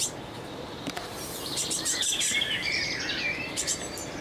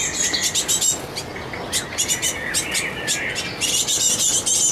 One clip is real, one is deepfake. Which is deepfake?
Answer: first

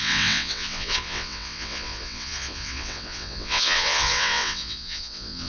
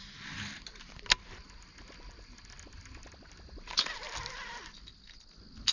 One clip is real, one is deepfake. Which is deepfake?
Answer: first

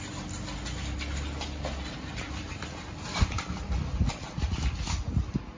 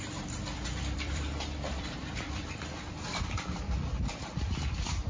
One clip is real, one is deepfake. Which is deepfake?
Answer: second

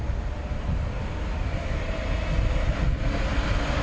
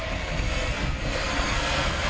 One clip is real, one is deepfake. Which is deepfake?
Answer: second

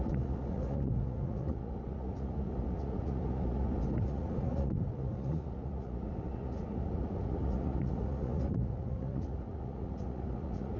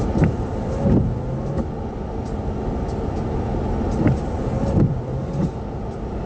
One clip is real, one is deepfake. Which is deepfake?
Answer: first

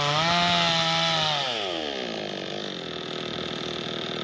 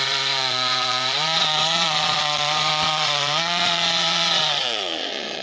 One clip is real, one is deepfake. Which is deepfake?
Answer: second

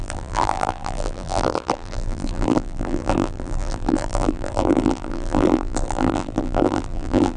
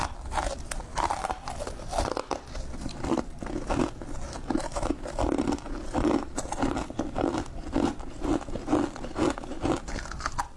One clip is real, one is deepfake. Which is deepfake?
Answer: first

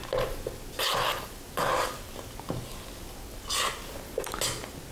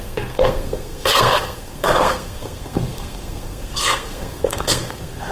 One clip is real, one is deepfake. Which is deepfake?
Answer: second